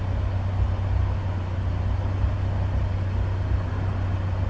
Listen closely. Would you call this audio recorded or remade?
recorded